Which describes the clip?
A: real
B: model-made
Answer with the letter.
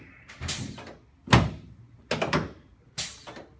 A